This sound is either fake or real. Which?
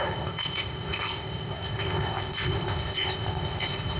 fake